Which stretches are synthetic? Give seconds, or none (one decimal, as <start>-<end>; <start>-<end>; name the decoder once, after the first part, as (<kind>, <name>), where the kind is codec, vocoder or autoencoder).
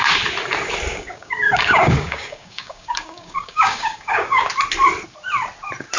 0.9-4.5 (codec, DAC)